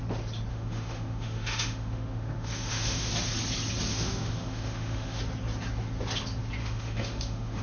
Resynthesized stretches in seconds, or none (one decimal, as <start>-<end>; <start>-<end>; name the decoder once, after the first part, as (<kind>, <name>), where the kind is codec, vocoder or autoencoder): 0.5-3.1 (autoencoder, DAC-VAE); 3.9-5.2; 6.6-7.6